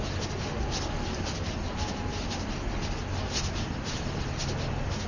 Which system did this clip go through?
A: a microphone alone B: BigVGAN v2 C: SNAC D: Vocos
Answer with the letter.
A